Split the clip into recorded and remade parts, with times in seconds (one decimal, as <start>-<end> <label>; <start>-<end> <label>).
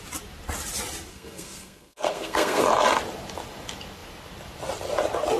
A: 0.0-1.1 recorded; 1.1-2.6 remade; 2.6-5.4 recorded